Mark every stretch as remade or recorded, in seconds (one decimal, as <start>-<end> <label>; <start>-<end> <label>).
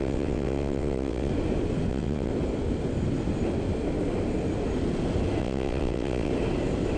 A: 0.0-1.3 remade; 1.3-1.9 recorded; 1.9-2.3 remade; 2.3-5.4 recorded; 5.4-6.3 remade; 6.3-7.0 recorded